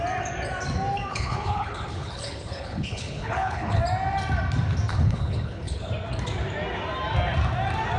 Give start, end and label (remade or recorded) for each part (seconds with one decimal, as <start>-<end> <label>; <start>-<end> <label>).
0.0-1.1 recorded; 1.1-3.8 remade; 3.8-4.9 recorded; 4.9-5.9 remade; 5.9-8.0 recorded